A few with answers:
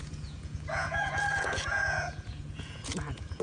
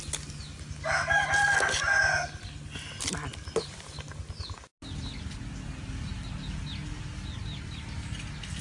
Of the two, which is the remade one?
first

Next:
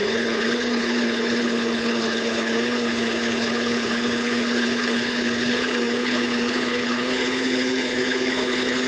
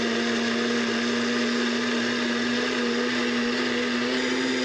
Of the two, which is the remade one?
first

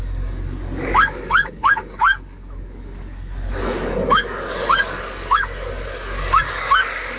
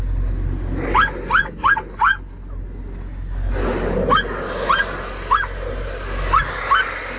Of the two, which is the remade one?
first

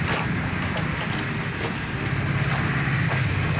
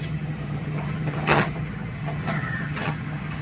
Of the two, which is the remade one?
second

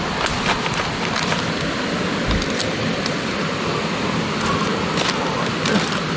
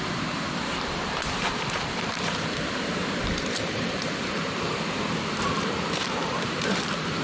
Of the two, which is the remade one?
second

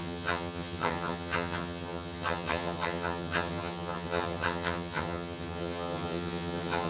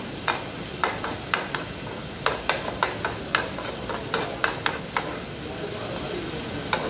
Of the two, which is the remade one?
first